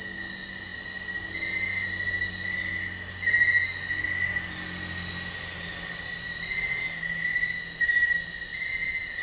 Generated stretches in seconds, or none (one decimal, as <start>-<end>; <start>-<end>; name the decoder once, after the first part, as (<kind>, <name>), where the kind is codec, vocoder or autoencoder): none

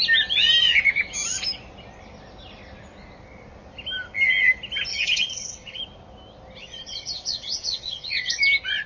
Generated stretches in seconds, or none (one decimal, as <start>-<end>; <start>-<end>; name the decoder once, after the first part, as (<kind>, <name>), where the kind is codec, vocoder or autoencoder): 4.9-5.8 (vocoder, WaveNeXt); 6.6-8.4

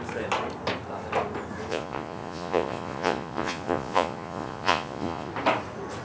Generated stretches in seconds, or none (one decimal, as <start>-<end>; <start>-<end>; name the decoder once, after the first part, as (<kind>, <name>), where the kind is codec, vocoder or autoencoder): 1.7-5.3 (vocoder, Vocos)

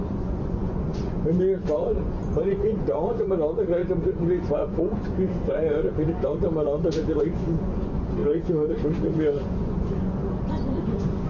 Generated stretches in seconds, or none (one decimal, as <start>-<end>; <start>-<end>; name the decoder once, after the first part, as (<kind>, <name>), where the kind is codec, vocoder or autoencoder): 0.0-11.3 (vocoder, Vocos)

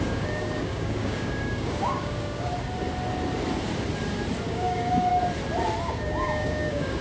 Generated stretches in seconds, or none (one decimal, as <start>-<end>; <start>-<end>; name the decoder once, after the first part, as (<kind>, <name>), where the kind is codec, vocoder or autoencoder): 0.0-2.5 (codec, DAC); 4.5-5.1; 5.8-7.0

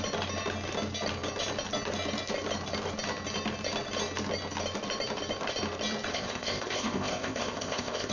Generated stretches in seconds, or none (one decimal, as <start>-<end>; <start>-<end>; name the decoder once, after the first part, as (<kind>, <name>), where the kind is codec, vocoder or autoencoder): 6.1-8.1 (codec, ZipCodec)

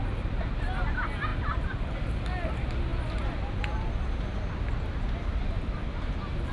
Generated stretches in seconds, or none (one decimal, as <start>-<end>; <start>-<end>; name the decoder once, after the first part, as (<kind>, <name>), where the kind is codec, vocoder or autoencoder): none

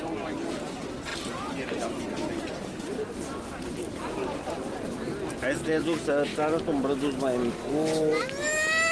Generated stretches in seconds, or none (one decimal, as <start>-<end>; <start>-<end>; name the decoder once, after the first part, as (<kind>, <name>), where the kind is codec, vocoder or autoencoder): none